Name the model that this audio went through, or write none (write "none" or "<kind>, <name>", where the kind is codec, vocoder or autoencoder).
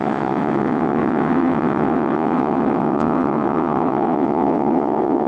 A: vocoder, WaveNeXt